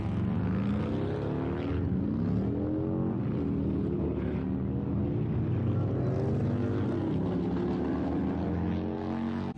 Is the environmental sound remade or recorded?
recorded